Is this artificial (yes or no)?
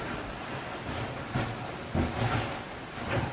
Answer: no